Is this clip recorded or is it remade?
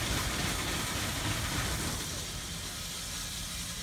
recorded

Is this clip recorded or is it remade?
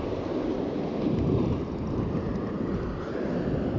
recorded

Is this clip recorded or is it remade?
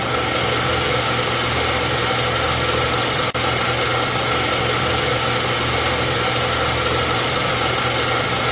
recorded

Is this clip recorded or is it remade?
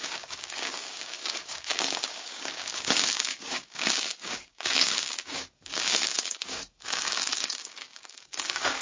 remade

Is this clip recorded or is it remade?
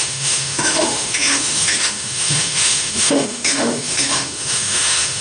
remade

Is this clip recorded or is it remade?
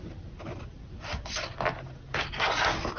recorded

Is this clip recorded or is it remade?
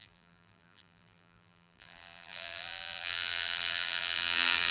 remade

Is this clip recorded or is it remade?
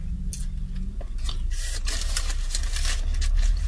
recorded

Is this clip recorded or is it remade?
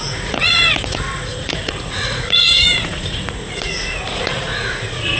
remade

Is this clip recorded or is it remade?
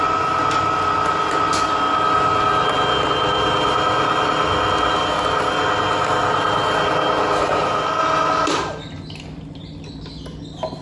recorded